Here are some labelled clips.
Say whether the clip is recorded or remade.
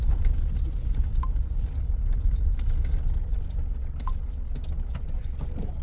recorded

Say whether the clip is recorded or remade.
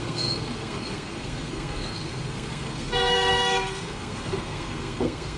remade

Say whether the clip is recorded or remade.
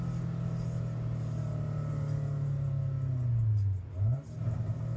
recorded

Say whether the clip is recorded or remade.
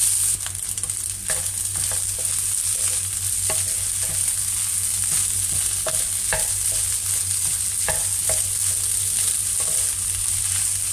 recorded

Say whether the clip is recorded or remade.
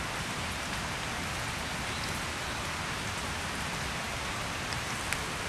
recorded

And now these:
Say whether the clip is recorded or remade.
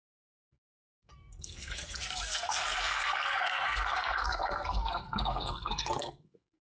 remade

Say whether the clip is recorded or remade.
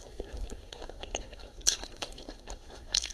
remade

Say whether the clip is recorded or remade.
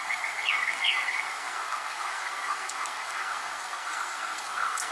remade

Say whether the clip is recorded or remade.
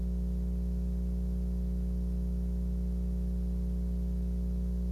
recorded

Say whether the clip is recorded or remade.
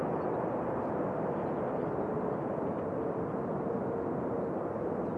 recorded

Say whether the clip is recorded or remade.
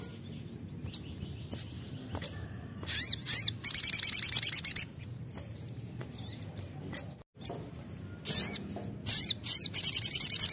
recorded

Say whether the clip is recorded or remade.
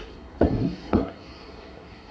remade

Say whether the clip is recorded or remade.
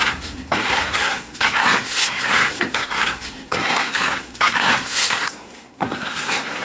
remade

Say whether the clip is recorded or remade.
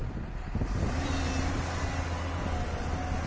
recorded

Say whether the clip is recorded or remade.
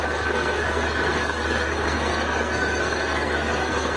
remade